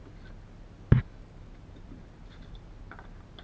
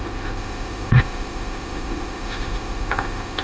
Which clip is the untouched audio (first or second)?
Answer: first